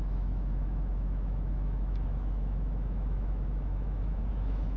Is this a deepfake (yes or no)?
yes